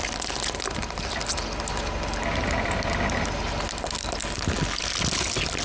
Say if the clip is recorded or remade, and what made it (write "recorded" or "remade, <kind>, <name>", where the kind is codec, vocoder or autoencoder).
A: recorded